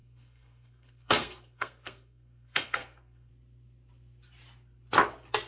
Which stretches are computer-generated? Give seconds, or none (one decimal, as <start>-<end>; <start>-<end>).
0.0-3.3